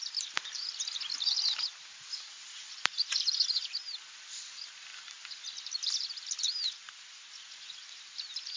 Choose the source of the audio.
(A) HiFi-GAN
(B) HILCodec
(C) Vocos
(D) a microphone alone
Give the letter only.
D